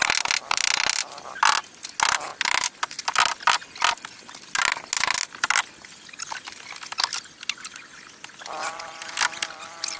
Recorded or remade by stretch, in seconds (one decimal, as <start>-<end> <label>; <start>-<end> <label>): 0.0-10.0 recorded